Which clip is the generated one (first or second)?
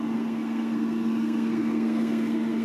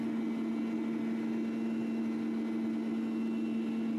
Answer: first